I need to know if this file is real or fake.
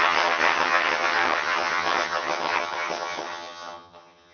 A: fake